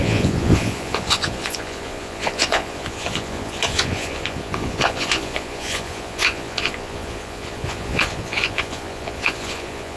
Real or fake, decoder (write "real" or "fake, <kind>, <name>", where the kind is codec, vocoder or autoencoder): fake, vocoder, Vocos